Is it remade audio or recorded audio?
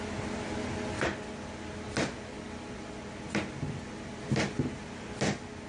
recorded